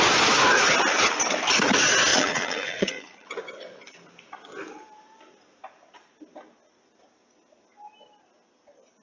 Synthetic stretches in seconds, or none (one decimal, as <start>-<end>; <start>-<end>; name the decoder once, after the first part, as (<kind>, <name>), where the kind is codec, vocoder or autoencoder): 2.1-3.3 (vocoder, Vocos)